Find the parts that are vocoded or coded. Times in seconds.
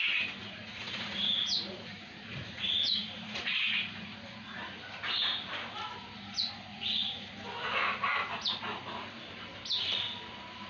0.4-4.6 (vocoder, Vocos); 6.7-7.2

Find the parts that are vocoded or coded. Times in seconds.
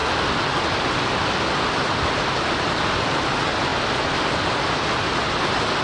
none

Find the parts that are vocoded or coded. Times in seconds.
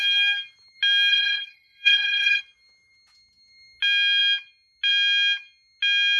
1.1-2.4 (codec, HILCodec)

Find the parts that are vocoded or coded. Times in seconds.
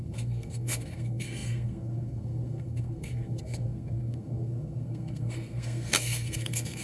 0.0-6.8 (codec, SNAC)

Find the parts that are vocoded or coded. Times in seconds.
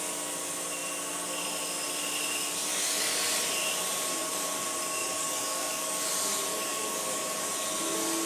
2.7-3.2 (codec, DAC); 5.0-6.1; 6.5-7.4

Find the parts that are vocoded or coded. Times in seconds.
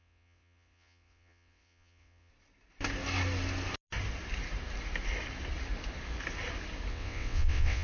0.0-2.3 (vocoder, WaveNeXt); 6.9-7.8